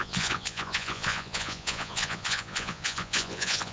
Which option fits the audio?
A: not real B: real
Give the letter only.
A